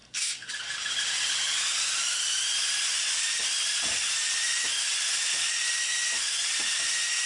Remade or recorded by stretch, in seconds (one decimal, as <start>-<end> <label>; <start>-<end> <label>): 0.0-0.5 remade; 0.5-7.3 recorded